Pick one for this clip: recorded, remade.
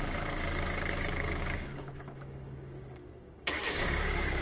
remade